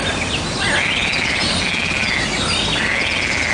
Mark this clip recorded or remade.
recorded